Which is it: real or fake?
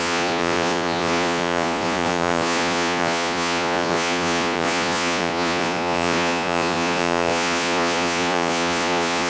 fake